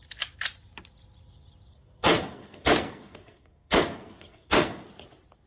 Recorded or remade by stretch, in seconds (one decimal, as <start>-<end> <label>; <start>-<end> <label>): 0.0-1.7 recorded; 1.7-4.9 remade; 4.9-5.5 recorded